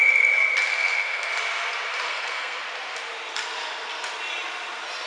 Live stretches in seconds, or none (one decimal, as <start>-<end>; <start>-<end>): 0.0-0.7; 1.3-2.1; 2.6-5.1